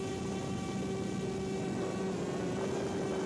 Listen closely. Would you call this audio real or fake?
real